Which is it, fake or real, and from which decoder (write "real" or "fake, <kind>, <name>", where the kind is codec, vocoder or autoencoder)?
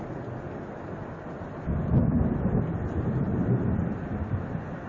real